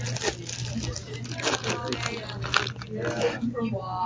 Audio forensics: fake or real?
real